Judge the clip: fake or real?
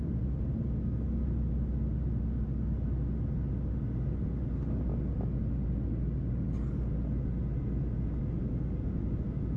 real